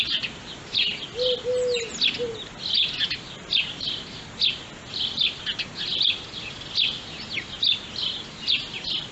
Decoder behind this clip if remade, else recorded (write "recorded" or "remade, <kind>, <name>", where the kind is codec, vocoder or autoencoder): recorded